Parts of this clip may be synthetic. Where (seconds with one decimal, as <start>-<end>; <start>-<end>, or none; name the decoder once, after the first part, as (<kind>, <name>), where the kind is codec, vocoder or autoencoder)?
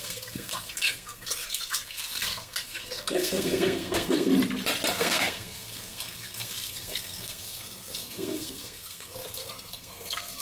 0.0-4.3 (codec, SNAC); 4.9-10.4